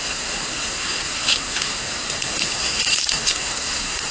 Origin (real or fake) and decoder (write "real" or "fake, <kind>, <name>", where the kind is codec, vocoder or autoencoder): fake, codec, SNAC